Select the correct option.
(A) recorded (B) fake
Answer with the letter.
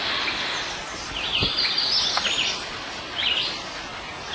A